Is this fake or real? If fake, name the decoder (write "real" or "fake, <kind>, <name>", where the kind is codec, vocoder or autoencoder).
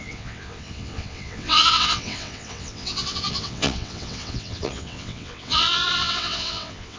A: fake, vocoder, WaveNeXt